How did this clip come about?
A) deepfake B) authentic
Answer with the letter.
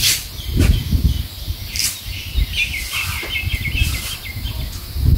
B